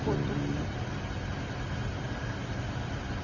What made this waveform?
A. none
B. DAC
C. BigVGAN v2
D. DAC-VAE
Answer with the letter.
A